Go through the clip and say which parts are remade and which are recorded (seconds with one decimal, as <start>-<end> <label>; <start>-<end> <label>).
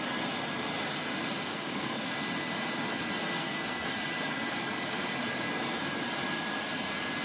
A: 0.0-1.5 recorded; 1.5-2.1 remade; 2.1-3.2 recorded; 3.2-3.9 remade; 3.9-7.2 recorded